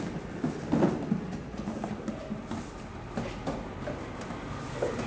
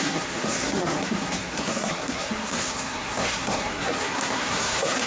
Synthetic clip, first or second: second